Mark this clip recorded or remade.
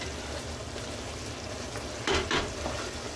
recorded